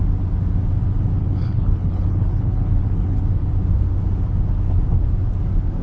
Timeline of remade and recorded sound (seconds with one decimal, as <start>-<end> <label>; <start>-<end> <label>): 0.0-1.2 recorded; 1.2-3.2 remade; 3.2-5.8 recorded